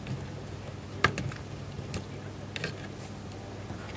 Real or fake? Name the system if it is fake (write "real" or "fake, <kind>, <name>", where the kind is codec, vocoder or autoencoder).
real